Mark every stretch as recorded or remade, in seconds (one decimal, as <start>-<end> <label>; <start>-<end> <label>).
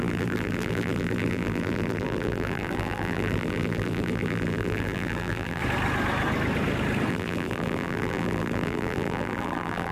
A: 0.0-5.6 remade; 5.6-7.1 recorded; 7.1-9.9 remade